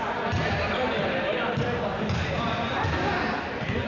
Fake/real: real